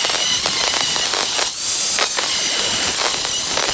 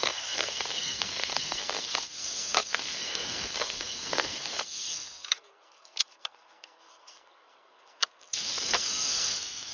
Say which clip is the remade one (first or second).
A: second